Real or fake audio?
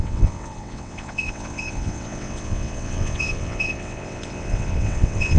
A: fake